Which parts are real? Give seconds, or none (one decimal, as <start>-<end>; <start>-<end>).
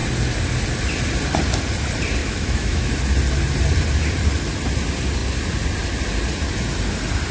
0.0-2.2; 2.9-7.3